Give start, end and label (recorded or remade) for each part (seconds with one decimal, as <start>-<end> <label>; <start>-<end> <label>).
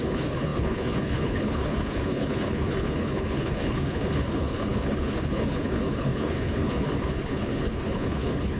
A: 0.0-8.6 remade